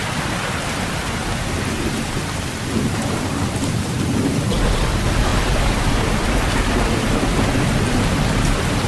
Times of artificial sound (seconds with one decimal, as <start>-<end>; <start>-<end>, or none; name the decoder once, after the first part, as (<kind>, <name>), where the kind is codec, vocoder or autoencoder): none